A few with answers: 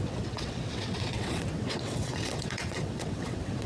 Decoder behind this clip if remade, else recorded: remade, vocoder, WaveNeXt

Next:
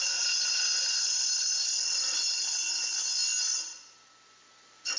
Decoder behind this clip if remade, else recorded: recorded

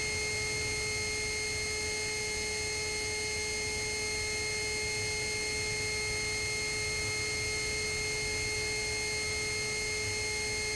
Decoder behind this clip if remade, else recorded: recorded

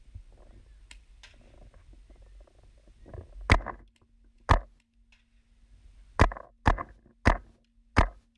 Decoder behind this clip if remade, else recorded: recorded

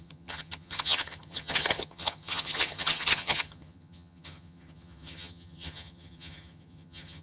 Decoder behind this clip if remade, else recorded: remade, vocoder, HiFi-GAN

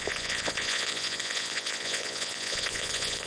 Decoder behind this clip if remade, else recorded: remade, vocoder, Vocos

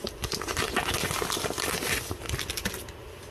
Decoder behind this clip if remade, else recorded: recorded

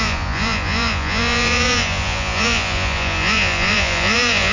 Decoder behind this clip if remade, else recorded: remade, vocoder, Vocos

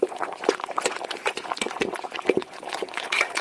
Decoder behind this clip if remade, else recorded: remade, vocoder, Vocos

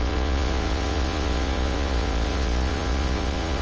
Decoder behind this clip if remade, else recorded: remade, vocoder, Vocos